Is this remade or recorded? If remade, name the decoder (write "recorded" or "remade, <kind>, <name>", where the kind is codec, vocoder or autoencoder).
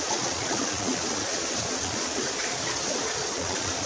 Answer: remade, vocoder, Vocos